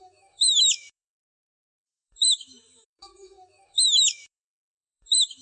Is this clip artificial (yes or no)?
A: yes